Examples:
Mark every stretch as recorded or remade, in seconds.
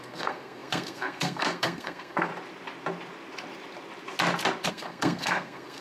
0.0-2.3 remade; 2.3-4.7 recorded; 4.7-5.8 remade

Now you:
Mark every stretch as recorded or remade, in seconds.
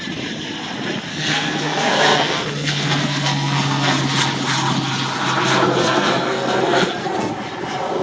0.0-1.1 recorded; 1.1-4.0 remade; 4.0-5.8 recorded; 5.8-7.3 remade; 7.3-8.0 recorded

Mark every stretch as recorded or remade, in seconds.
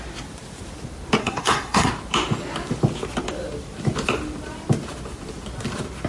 0.0-1.2 recorded; 1.2-1.9 remade; 1.9-6.1 recorded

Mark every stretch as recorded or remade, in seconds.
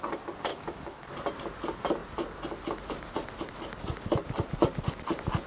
0.0-0.5 recorded; 0.5-1.1 remade; 1.1-5.5 recorded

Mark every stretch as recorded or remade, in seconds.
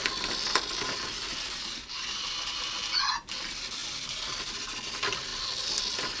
0.0-2.5 remade; 2.5-5.3 recorded; 5.3-5.8 remade; 5.8-6.2 recorded